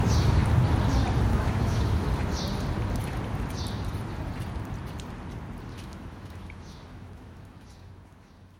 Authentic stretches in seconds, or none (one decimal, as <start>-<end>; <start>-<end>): 0.0-1.3; 2.1-5.7